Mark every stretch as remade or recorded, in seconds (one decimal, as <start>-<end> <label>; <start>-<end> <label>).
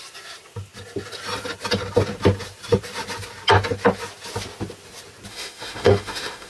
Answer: 0.0-5.3 recorded; 5.3-6.5 remade